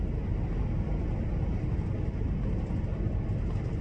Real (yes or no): yes